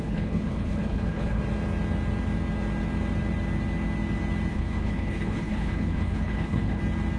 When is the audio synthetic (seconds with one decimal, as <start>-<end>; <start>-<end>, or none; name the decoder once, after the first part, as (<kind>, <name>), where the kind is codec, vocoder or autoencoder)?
0.0-1.4 (codec, HILCodec); 4.5-6.8